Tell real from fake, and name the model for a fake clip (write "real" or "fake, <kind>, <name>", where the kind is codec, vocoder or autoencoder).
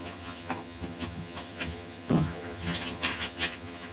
fake, vocoder, HiFi-GAN